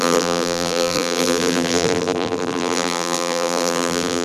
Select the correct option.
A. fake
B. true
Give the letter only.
A